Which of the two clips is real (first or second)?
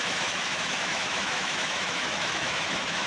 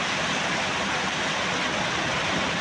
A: second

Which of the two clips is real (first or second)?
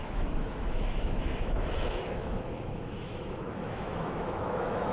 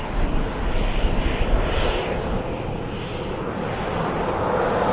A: second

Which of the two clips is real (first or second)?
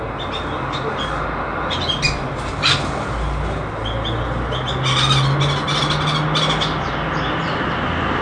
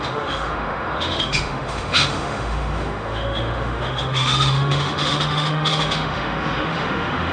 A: first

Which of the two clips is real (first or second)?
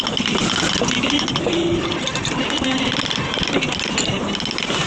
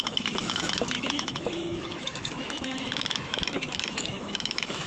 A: first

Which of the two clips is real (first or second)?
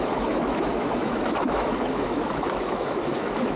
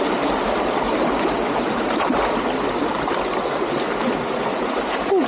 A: second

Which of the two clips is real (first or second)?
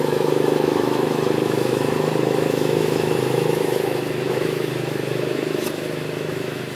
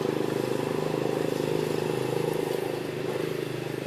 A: second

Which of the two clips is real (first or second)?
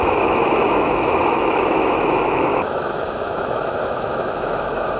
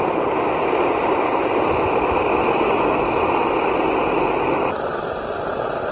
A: second